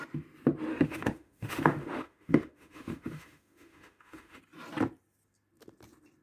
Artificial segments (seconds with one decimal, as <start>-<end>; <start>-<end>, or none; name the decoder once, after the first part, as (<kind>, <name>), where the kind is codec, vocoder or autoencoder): 0.7-4.4 (autoencoder, DAC-VAE)